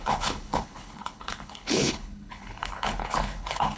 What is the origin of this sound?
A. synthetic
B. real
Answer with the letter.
A